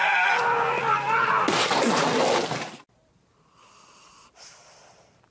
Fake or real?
real